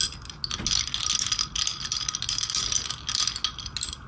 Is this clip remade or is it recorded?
recorded